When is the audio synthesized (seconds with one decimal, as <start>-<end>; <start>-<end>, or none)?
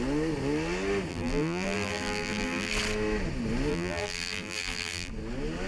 1.1-2.7; 3.7-5.1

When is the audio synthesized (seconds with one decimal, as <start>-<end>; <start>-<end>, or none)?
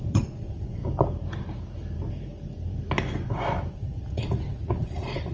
0.0-0.8; 3.7-5.3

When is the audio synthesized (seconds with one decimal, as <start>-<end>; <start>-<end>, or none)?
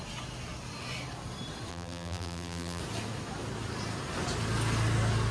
1.7-2.8